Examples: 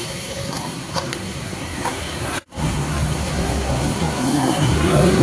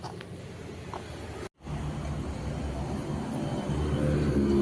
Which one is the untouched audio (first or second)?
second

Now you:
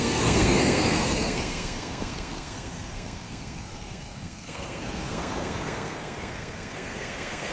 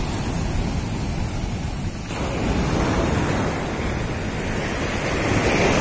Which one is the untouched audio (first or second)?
second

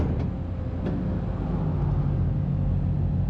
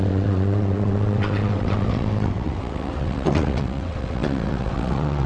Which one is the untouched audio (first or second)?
first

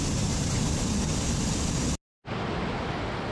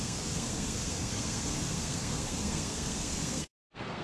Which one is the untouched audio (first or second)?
first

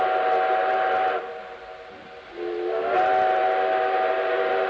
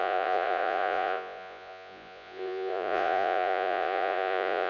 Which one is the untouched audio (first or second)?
first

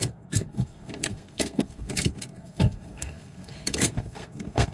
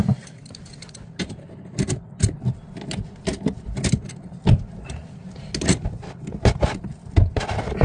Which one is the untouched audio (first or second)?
second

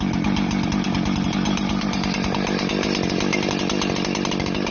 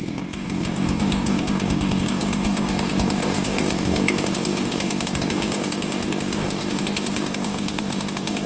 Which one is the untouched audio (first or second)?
first